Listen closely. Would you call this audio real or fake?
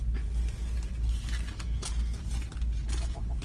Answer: real